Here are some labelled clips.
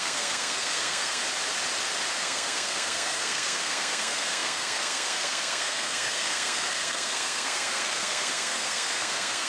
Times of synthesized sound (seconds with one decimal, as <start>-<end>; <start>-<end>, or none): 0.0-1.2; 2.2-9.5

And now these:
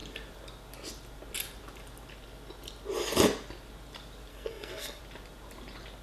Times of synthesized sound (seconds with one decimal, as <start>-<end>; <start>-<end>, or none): 4.3-5.0

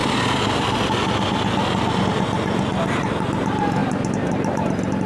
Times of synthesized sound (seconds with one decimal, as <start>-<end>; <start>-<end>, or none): none

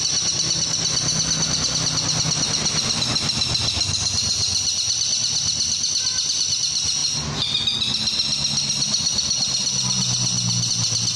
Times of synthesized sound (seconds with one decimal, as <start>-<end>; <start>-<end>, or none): none

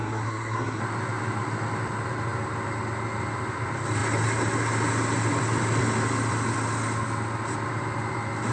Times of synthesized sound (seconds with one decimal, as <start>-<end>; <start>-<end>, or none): 0.0-0.8

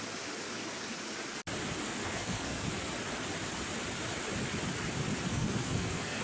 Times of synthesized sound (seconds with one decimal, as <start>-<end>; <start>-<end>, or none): 2.0-2.9; 5.3-6.2

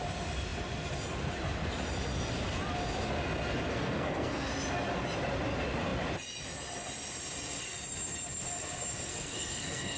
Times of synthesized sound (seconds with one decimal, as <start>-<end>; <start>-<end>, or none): 3.7-4.5; 9.1-10.0

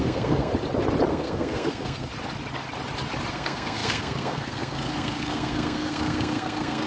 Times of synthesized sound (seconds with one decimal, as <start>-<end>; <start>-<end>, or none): 0.0-0.5; 1.1-2.1; 3.3-6.9